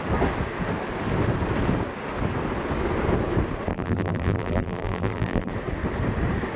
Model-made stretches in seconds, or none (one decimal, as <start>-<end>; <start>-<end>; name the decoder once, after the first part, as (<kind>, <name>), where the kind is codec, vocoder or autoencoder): 3.7-5.5 (vocoder, BigVGAN v2)